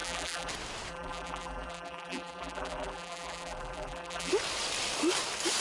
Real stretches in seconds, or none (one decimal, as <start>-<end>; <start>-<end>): 0.5-0.9; 4.3-5.6